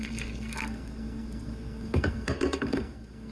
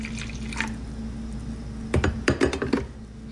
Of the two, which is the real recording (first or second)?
second